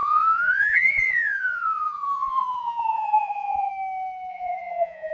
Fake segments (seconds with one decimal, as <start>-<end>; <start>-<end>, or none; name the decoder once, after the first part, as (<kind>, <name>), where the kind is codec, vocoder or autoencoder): 0.0-3.7 (vocoder, Vocos); 4.3-5.1